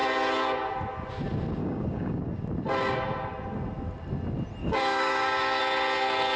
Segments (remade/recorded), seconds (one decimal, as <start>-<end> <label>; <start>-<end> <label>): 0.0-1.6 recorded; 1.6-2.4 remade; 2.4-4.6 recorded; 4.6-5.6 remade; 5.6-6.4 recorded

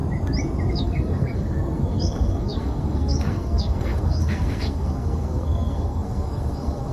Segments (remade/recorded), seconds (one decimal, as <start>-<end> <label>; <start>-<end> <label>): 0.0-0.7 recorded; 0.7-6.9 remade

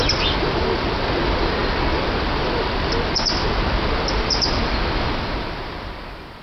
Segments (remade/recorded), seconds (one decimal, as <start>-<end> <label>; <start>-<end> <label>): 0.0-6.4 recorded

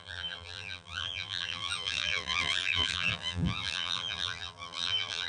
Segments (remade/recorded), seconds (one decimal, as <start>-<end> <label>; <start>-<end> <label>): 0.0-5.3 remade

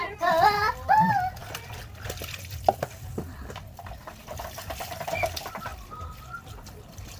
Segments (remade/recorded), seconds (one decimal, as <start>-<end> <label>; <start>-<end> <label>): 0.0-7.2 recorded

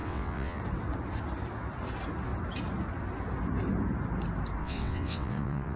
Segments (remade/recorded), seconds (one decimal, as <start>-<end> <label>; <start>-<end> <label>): 0.0-0.6 remade; 0.6-4.6 recorded; 4.6-5.8 remade